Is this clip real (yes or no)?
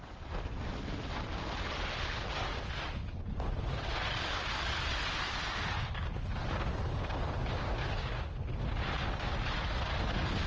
yes